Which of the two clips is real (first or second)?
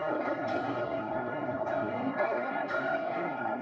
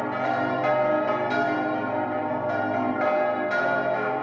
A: second